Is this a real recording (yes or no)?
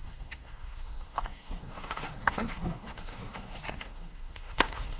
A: no